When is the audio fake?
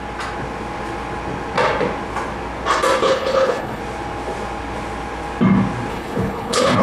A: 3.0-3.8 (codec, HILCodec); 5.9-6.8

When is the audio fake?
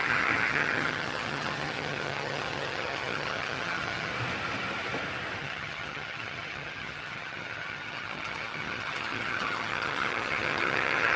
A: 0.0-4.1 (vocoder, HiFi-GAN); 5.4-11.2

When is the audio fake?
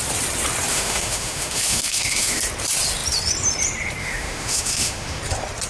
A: 0.7-2.4 (autoencoder, DAC-VAE); 4.0-5.2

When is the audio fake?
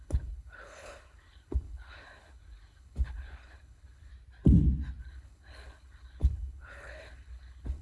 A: 0.0-4.1 (codec, HILCodec); 5.0-7.8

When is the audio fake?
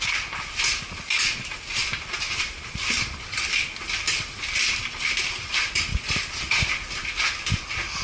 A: none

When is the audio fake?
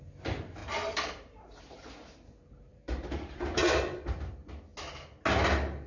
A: 0.6-1.6 (vocoder, BigVGAN v2); 2.7-4.3